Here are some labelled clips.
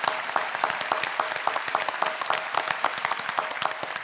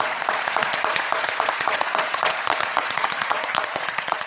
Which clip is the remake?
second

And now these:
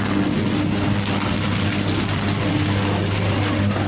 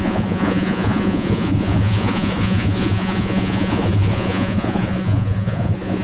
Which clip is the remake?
second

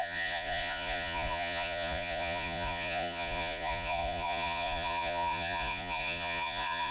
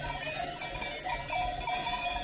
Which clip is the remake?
first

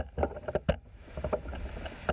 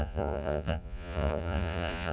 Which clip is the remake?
second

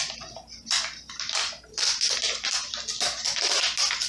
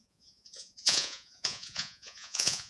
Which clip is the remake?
second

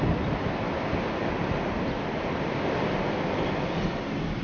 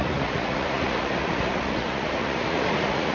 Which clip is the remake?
second